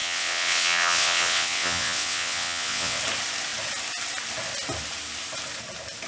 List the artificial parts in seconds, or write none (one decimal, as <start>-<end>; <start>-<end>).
0.0-3.0

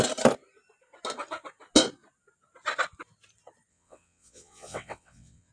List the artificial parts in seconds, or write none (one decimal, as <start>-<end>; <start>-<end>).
3.7-5.5

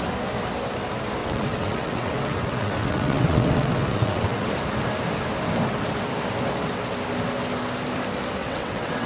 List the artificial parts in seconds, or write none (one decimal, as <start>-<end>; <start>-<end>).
1.2-4.5; 8.4-9.1

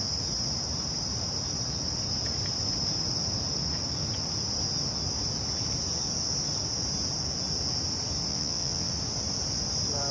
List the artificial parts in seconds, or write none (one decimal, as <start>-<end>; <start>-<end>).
8.3-8.9

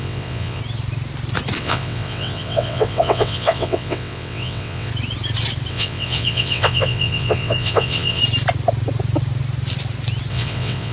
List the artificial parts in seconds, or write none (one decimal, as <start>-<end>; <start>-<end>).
0.0-0.6; 1.6-4.9; 5.7-8.2; 10.3-10.9

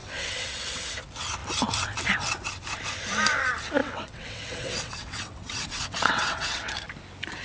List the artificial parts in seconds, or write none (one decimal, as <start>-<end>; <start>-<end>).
0.0-0.8; 3.8-6.7